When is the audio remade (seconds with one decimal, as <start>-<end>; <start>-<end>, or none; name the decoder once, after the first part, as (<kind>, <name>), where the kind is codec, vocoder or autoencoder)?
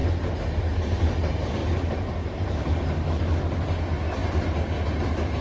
none